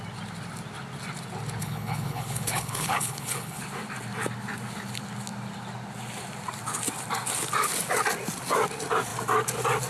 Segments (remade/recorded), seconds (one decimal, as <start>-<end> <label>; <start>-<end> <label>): 0.0-1.6 recorded; 1.6-3.6 remade; 3.6-9.9 recorded